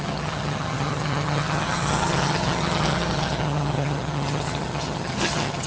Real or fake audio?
fake